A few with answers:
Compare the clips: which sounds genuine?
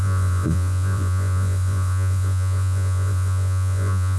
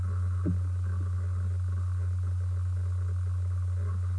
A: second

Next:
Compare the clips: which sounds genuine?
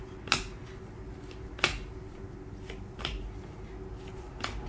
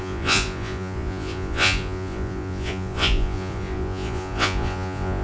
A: first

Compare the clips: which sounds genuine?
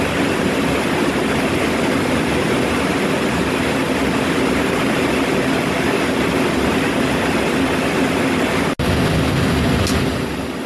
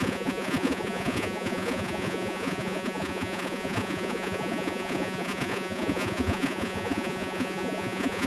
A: first